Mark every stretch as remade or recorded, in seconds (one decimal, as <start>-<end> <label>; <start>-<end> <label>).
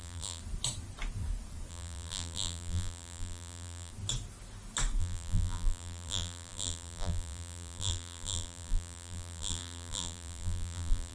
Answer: 0.0-0.4 remade; 0.4-1.7 recorded; 1.7-3.9 remade; 3.9-5.0 recorded; 5.0-11.1 remade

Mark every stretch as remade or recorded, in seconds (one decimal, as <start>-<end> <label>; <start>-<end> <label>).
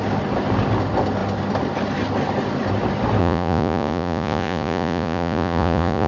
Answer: 0.0-3.2 recorded; 3.2-6.1 remade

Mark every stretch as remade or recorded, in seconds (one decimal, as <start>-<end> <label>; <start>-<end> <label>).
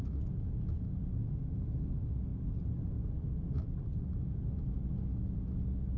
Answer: 0.0-2.3 recorded; 2.3-4.2 remade; 4.2-6.0 recorded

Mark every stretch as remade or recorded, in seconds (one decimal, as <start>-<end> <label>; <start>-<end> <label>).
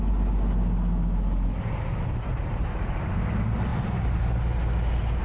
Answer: 0.0-5.2 recorded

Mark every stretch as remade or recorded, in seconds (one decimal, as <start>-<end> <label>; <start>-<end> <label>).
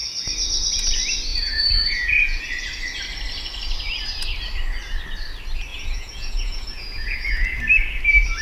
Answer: 0.0-1.3 recorded; 1.3-2.4 remade; 2.4-5.7 recorded; 5.7-7.6 remade; 7.6-8.4 recorded